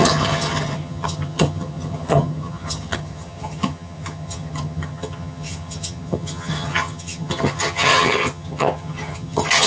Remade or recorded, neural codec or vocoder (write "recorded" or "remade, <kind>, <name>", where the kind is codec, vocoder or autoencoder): remade, vocoder, HiFi-GAN